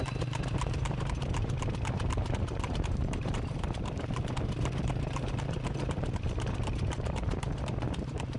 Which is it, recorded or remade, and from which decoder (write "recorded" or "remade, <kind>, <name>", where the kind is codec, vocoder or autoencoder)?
remade, vocoder, BigVGAN v2